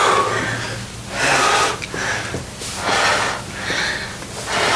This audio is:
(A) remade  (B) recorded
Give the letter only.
B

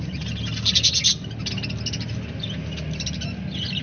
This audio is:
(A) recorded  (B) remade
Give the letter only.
A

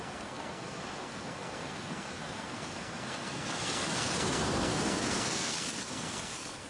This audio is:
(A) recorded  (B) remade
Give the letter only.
B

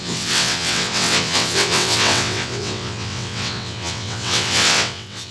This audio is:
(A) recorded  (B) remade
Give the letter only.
B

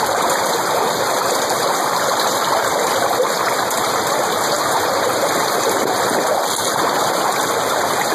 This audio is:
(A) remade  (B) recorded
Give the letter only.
B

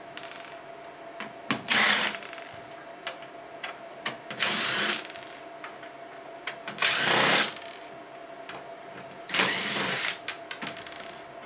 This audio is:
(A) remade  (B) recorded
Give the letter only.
B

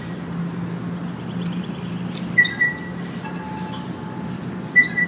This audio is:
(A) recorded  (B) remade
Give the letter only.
A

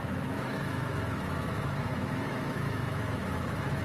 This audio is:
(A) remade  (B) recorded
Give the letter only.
A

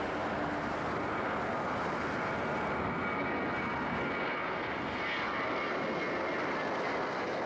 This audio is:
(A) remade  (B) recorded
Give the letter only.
B